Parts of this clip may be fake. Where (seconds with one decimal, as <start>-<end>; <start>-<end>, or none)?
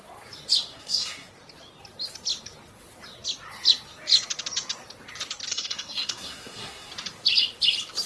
0.7-1.3; 5.5-6.9